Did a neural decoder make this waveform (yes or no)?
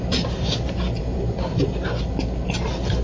no